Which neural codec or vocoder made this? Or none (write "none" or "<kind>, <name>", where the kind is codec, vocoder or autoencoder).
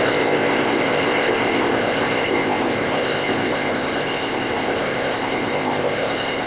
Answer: codec, ZipCodec